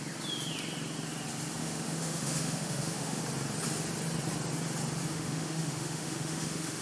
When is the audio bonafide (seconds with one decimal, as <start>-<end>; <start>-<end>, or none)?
0.0-1.6; 3.2-5.1